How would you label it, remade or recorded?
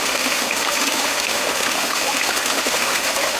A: remade